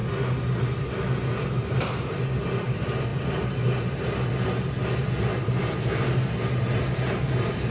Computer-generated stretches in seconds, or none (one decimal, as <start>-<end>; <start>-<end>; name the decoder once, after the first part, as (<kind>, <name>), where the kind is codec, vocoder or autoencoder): none